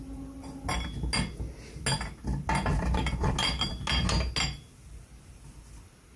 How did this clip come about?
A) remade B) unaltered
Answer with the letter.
B